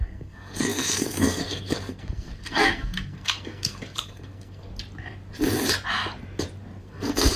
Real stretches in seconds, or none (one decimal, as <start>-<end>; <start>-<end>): 4.7-6.8